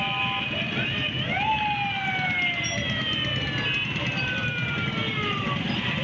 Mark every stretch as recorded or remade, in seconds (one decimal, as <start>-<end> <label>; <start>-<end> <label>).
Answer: 0.0-6.0 recorded